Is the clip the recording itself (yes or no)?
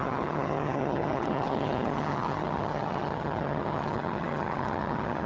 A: no